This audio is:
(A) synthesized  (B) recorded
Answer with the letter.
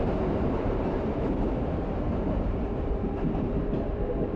A